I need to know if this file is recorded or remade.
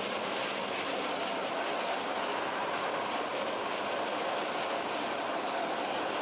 recorded